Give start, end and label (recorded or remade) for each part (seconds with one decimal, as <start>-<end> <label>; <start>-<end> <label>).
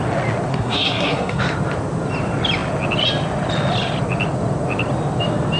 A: 0.0-0.5 recorded; 0.5-1.4 remade; 1.4-5.6 recorded